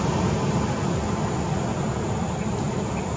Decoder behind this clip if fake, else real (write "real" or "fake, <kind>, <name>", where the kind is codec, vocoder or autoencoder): real